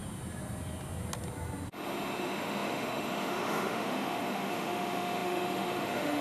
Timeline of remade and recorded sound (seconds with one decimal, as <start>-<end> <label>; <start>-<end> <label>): 0.0-2.2 recorded; 2.2-6.2 remade